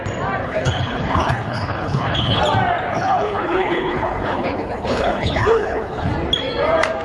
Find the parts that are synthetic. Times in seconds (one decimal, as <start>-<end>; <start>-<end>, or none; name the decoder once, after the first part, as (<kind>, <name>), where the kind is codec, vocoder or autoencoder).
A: 0.4-2.4 (codec, HILCodec); 2.9-6.1